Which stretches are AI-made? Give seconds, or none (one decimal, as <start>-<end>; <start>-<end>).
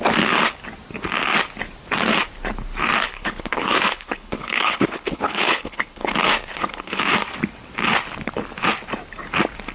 3.1-6.1; 6.5-7.0